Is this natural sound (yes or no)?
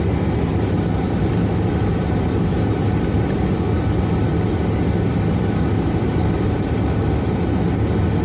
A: yes